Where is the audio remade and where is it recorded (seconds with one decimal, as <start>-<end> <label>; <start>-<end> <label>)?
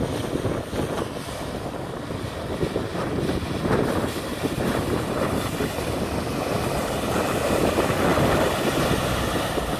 0.0-2.9 recorded; 2.9-6.0 remade; 6.0-9.8 recorded